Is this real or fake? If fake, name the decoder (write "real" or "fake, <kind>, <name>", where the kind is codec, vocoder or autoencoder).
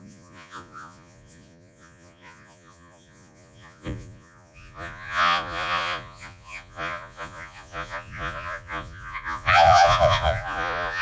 fake, vocoder, Vocos